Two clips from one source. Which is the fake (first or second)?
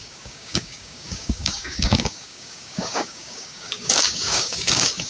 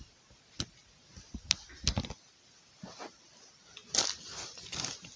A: first